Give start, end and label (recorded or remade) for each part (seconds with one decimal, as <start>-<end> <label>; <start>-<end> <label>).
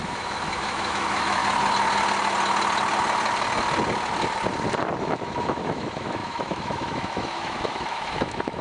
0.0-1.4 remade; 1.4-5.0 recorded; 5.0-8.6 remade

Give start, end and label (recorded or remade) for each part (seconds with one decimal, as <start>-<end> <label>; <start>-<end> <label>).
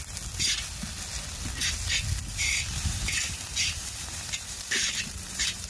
0.0-2.3 recorded; 2.3-5.7 remade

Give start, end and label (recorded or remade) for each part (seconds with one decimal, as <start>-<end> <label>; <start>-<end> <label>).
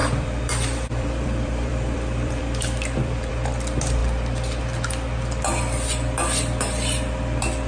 0.0-3.3 remade; 3.3-7.7 recorded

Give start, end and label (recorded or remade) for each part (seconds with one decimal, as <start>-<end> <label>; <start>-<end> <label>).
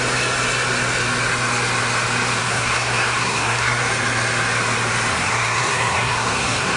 0.0-2.4 recorded; 2.4-3.8 remade; 3.8-5.1 recorded; 5.1-6.8 remade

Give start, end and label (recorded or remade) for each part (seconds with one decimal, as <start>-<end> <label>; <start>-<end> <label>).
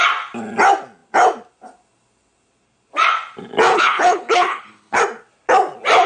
0.0-3.7 recorded; 3.7-5.0 remade; 5.0-6.1 recorded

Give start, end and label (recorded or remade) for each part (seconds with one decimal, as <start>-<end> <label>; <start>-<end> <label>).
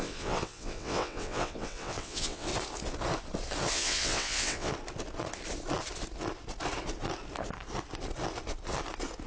0.0-2.5 remade; 2.5-3.7 recorded; 3.7-4.7 remade; 4.7-9.3 recorded